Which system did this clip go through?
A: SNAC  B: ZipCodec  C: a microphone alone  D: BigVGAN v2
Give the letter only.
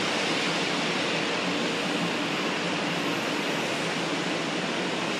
C